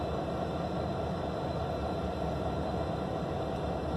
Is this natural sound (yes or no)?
yes